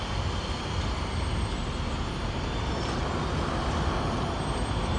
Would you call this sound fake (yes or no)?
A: no